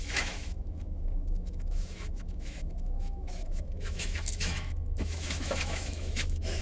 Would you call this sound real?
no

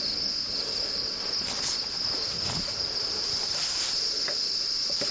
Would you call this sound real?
yes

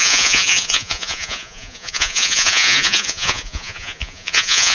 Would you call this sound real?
no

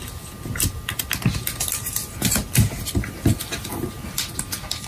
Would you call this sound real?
yes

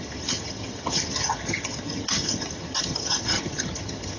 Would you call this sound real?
no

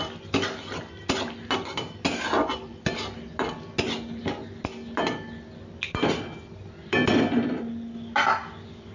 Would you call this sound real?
yes